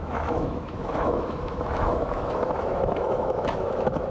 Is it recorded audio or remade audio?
remade